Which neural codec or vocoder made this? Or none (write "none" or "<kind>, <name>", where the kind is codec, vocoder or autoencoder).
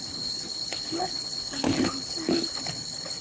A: codec, HILCodec